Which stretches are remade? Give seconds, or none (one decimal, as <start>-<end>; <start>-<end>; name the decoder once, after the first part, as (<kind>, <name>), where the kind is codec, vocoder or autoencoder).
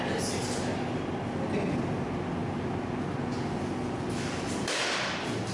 none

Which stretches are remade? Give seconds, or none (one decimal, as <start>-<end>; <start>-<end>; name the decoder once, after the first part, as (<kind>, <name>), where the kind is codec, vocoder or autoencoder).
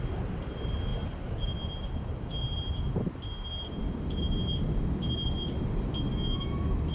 6.1-6.9 (autoencoder, DAC-VAE)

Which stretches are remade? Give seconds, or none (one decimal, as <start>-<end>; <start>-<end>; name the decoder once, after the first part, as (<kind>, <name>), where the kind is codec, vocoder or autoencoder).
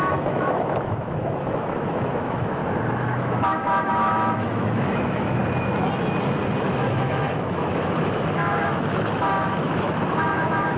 0.0-2.6 (autoencoder, DAC-VAE); 3.2-5.4; 6.7-10.8